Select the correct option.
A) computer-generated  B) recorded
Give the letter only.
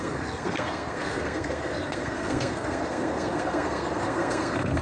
A